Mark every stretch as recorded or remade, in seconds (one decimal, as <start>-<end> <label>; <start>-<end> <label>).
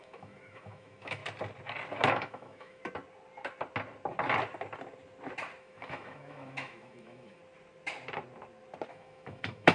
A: 0.0-1.2 remade; 1.2-2.1 recorded; 2.1-2.8 remade; 2.8-5.6 recorded; 5.6-7.4 remade; 7.4-8.9 recorded; 8.9-9.7 remade